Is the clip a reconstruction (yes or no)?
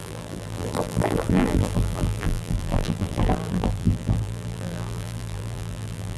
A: yes